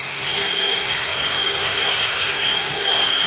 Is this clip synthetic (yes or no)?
yes